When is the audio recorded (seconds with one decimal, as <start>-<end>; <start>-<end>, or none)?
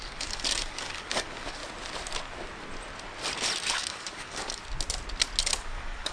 1.6-3.7; 4.6-5.6